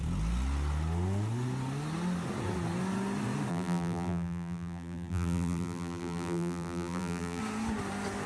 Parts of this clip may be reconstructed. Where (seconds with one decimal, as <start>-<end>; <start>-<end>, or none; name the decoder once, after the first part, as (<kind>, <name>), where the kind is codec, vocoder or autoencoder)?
3.5-7.4 (vocoder, BigVGAN v2)